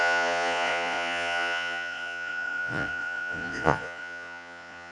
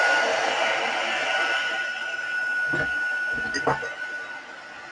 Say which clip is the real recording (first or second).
second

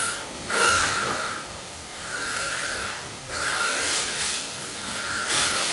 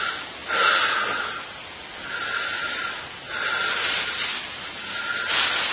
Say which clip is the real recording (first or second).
second